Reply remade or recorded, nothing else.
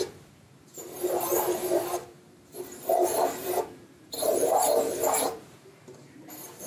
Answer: remade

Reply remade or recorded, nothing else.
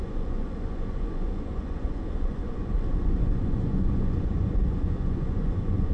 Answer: remade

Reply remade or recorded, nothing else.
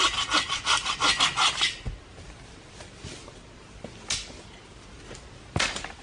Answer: recorded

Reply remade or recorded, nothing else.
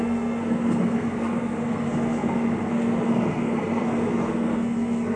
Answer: remade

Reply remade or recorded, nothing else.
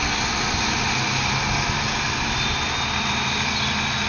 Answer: recorded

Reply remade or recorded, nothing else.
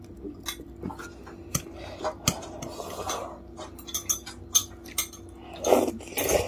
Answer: recorded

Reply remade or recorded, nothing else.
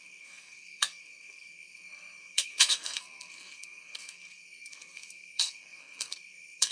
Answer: remade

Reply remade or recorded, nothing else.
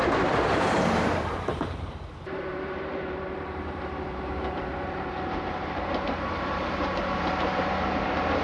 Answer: remade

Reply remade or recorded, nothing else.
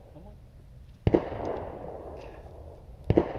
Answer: recorded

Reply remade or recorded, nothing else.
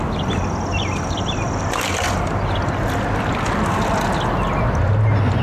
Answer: recorded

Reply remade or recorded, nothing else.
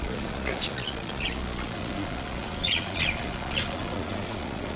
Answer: remade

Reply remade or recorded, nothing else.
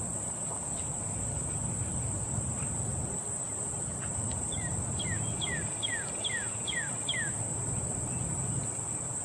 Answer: recorded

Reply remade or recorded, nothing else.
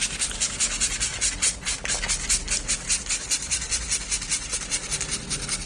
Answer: recorded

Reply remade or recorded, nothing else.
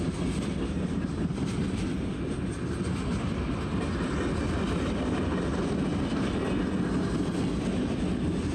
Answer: recorded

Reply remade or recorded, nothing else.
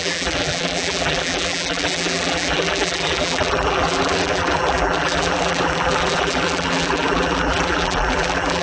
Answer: remade